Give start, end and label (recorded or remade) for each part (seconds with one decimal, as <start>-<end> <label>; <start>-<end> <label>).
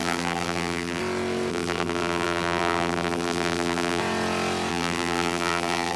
0.0-1.0 remade; 1.0-1.5 recorded; 1.5-4.0 remade; 4.0-4.7 recorded; 4.7-6.0 remade